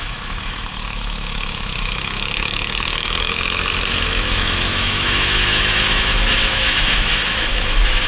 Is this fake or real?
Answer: fake